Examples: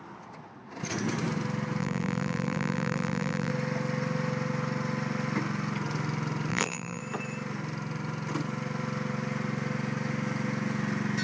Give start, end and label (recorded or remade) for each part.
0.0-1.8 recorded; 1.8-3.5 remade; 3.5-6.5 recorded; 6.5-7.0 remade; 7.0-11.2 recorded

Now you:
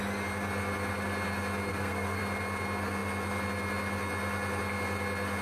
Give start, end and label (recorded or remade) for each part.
0.0-1.7 recorded; 1.7-2.2 remade; 2.2-5.4 recorded

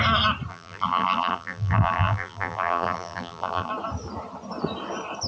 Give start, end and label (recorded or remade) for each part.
0.0-0.5 recorded; 0.5-3.7 remade; 3.7-5.3 recorded